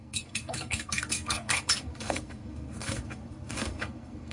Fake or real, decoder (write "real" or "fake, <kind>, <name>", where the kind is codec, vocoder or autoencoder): fake, codec, SNAC